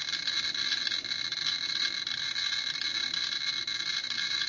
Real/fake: real